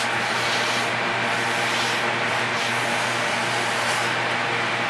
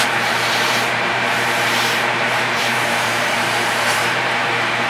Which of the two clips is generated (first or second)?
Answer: second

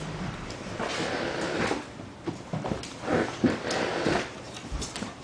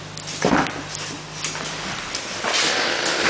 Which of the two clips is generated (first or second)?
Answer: first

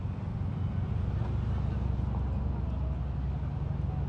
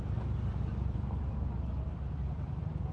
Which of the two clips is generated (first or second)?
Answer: second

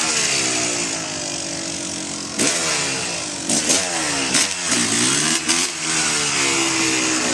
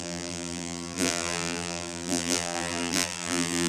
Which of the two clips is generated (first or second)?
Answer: second